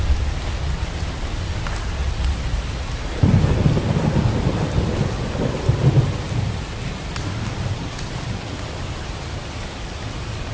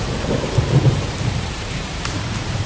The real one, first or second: first